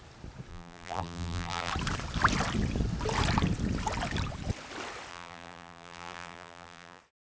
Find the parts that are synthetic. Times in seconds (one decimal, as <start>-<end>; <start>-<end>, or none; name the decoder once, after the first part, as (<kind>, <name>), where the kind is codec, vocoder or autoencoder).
0.5-1.7 (vocoder, BigVGAN v2); 5.1-7.0